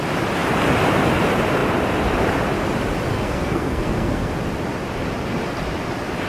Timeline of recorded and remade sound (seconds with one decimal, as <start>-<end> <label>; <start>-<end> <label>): 0.0-3.1 recorded; 3.1-4.3 remade; 4.3-6.3 recorded